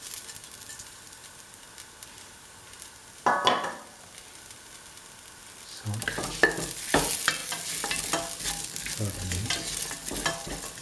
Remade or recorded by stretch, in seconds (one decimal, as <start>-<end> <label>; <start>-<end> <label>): 0.0-10.8 recorded